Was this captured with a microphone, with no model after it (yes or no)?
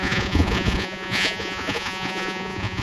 no